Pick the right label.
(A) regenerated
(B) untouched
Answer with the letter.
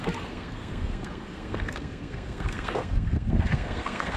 A